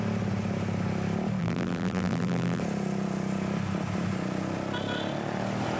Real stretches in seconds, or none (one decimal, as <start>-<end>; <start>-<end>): 0.0-1.4; 2.6-5.8